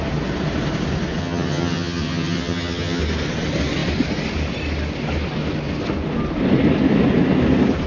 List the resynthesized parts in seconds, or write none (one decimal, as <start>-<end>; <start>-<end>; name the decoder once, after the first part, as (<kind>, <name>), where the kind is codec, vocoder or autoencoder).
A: 1.2-3.0 (vocoder, HiFi-GAN)